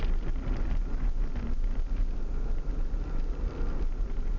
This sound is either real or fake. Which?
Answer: real